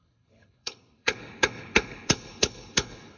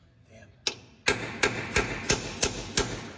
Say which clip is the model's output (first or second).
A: first